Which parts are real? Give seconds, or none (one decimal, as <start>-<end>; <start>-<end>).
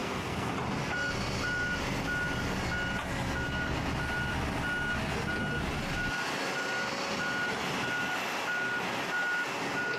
0.5-10.0